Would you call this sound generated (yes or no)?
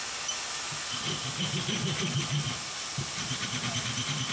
no